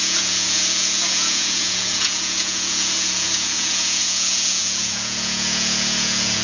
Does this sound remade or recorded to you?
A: remade